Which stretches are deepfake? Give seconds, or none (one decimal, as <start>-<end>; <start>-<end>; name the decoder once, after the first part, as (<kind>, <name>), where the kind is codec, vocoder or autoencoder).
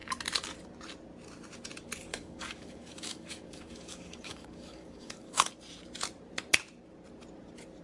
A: 2.1-5.5 (codec, DAC)